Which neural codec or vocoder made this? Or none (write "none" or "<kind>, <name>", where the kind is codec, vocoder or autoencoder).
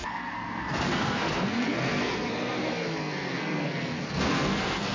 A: codec, SNAC